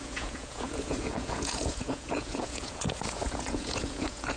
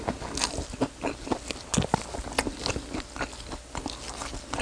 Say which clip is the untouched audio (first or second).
second